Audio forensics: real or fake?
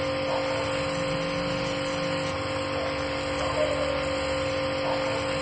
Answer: real